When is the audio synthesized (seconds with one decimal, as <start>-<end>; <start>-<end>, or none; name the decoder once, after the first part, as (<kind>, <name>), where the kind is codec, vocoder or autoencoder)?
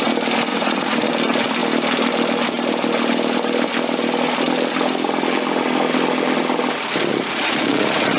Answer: 0.5-1.1 (vocoder, Vocos); 7.1-8.2